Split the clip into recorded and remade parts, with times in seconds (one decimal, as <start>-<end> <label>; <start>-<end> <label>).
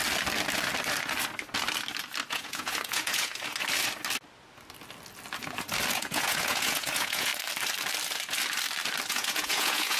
0.0-2.3 recorded; 2.3-3.3 remade; 3.3-5.9 recorded; 5.9-7.3 remade; 7.3-9.1 recorded; 9.1-10.0 remade